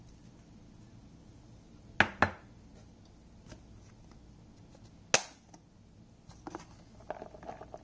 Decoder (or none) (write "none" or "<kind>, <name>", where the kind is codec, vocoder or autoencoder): none